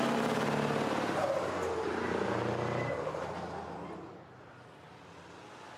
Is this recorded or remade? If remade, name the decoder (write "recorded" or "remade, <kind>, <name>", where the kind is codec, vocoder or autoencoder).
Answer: recorded